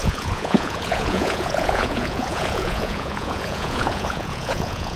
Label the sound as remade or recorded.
remade